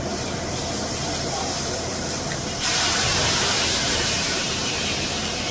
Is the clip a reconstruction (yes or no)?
yes